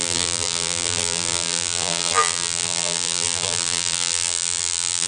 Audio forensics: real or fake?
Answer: fake